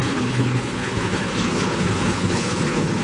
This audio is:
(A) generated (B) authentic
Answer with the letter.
A